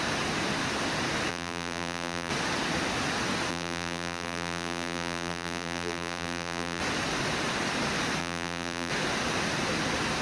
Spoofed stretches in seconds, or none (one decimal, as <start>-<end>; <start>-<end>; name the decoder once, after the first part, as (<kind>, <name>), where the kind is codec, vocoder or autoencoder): 1.3-2.3 (vocoder, BigVGAN v2); 3.5-6.8; 8.2-8.9